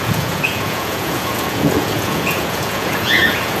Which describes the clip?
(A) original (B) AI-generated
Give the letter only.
B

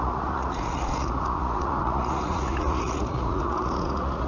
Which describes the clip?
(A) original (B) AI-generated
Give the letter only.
B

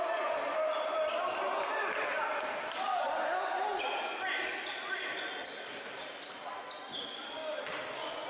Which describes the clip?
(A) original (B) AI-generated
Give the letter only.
A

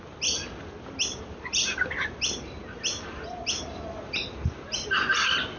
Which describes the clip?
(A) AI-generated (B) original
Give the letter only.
B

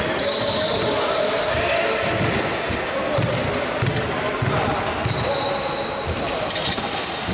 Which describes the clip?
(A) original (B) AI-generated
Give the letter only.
A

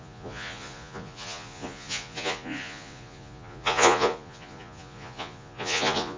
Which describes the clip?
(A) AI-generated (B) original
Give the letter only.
A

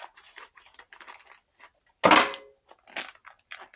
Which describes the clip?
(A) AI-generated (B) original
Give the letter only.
B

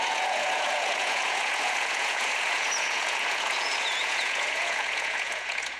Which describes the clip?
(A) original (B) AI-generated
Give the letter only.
B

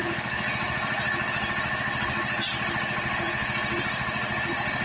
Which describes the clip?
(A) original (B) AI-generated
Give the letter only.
A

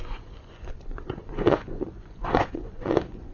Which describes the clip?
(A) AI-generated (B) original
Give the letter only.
A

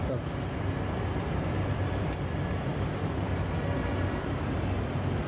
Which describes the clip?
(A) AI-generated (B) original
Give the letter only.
B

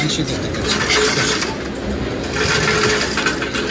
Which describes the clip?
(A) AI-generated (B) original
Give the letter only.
B